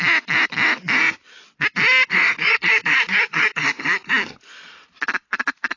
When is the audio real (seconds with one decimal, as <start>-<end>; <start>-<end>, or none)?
0.0-2.1; 4.4-5.8